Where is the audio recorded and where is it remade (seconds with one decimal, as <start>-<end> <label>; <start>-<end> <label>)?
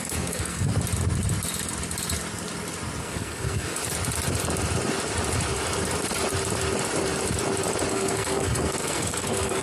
0.0-0.7 remade; 0.7-3.0 recorded; 3.0-3.8 remade; 3.8-7.9 recorded; 7.9-9.6 remade